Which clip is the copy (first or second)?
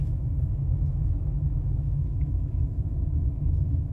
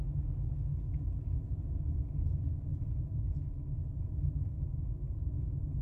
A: first